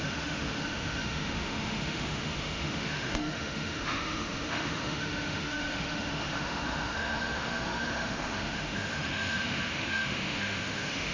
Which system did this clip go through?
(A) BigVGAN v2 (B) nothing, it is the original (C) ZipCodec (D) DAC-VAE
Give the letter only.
D